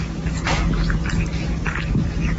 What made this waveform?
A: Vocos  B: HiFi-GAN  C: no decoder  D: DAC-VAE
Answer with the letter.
C